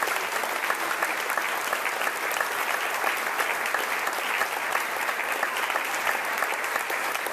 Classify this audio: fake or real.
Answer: real